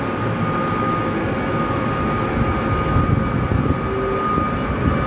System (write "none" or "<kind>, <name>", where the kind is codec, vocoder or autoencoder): none